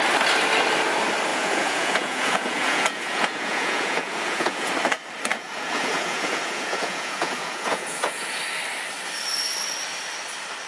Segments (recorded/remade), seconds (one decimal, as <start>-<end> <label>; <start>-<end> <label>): 0.0-1.3 recorded; 1.3-4.7 remade; 4.7-5.3 recorded; 5.3-8.4 remade; 8.4-10.7 recorded